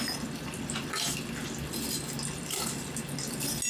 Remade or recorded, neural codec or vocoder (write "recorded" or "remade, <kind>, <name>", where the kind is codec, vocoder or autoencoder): recorded